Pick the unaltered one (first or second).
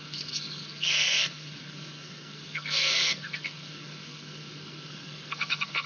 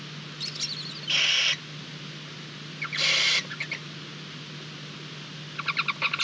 second